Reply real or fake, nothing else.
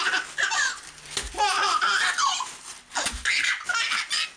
real